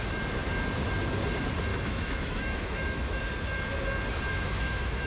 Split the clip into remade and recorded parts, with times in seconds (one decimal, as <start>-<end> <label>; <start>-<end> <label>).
0.0-1.7 recorded; 1.7-3.2 remade; 3.2-4.3 recorded; 4.3-5.1 remade